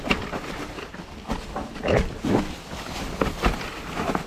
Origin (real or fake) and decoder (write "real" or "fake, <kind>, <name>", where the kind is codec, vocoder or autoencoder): real